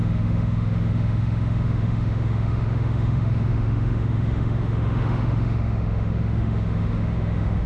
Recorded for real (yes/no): no